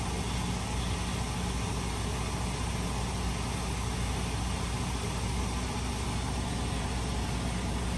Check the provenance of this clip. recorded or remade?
recorded